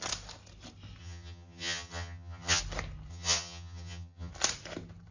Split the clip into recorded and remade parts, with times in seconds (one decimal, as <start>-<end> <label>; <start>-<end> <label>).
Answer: 0.0-1.0 recorded; 1.0-2.6 remade; 2.6-3.1 recorded; 3.1-4.3 remade; 4.3-5.1 recorded